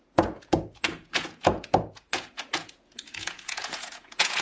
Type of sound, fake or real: fake